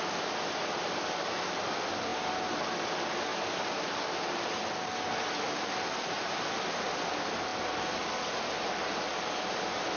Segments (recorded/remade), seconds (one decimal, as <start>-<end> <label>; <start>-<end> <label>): 0.0-10.0 recorded